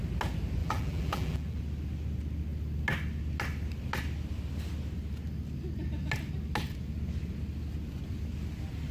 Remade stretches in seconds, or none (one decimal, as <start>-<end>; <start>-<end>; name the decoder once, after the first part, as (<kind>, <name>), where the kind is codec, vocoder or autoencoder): 0.6-1.6 (vocoder, BigVGAN v2)